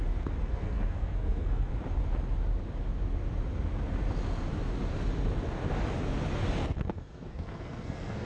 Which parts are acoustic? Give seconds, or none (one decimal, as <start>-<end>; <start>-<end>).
0.0-0.4; 1.7-6.6